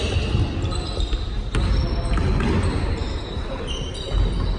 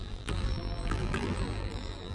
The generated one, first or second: second